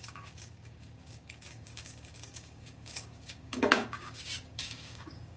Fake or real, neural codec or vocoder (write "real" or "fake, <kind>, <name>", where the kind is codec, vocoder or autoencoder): fake, codec, DAC